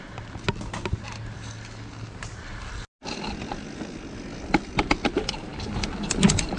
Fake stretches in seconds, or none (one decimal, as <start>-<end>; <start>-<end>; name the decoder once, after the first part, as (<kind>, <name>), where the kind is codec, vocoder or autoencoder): none